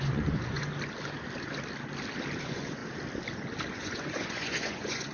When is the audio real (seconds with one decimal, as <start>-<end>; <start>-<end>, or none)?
0.7-2.4; 2.8-3.7